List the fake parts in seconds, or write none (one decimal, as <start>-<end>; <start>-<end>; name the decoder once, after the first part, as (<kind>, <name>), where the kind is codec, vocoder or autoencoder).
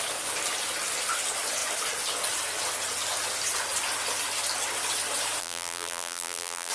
5.4-6.7 (vocoder, BigVGAN v2)